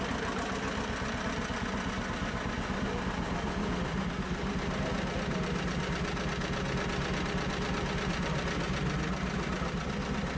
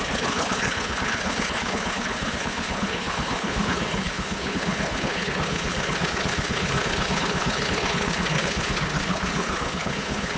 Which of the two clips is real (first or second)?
first